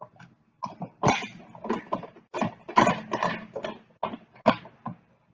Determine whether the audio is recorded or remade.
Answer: recorded